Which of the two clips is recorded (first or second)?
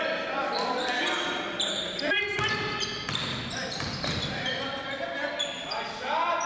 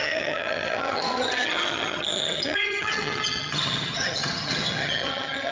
first